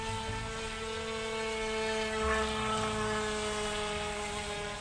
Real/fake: real